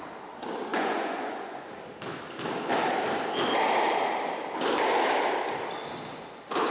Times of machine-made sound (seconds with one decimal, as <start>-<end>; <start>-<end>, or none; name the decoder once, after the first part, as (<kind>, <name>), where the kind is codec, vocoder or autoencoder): 0.7-1.7 (vocoder, Vocos)